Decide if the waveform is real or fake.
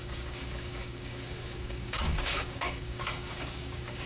fake